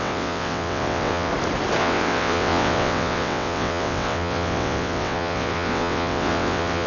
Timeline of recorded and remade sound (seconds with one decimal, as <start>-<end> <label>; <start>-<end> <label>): 0.0-1.3 remade; 1.3-1.8 recorded; 1.8-6.9 remade